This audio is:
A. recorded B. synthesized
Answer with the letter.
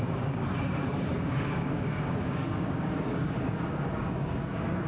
B